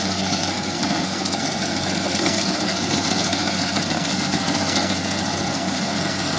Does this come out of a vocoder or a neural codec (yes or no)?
yes